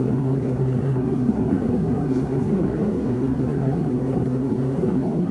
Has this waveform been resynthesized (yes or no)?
yes